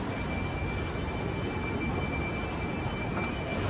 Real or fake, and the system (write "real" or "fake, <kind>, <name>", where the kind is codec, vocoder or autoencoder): real